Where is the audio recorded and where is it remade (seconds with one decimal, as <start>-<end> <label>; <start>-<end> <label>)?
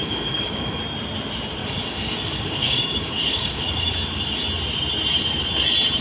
0.0-0.8 remade; 0.8-1.6 recorded; 1.6-3.9 remade; 3.9-6.0 recorded